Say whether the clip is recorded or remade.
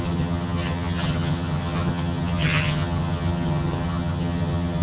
remade